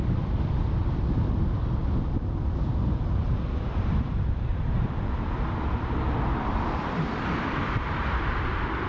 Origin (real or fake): fake